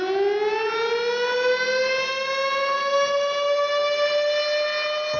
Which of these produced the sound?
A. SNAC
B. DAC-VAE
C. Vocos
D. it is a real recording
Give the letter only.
D